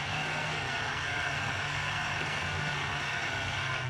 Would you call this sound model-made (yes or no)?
yes